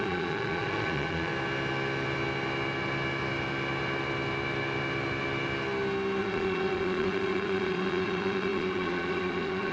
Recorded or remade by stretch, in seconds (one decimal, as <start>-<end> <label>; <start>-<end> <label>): 0.0-1.3 remade; 1.3-6.2 recorded; 6.2-9.7 remade